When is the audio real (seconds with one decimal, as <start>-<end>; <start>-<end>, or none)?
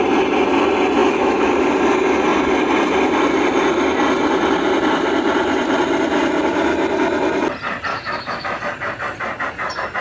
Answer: 0.0-1.0; 1.5-7.9; 8.6-10.0